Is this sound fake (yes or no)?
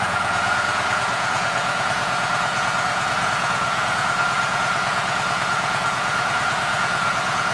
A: yes